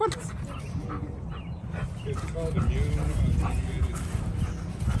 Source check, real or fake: real